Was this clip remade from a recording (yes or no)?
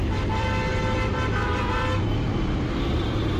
yes